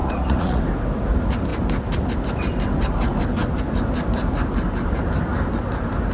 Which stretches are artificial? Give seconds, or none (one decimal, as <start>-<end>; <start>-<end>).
0.0-0.6